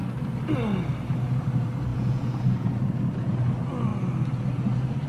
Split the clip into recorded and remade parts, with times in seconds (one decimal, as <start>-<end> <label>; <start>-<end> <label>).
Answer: 0.0-1.9 recorded; 1.9-2.7 remade; 2.7-5.1 recorded